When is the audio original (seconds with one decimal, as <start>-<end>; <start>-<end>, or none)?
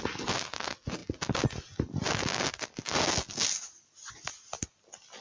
0.0-5.2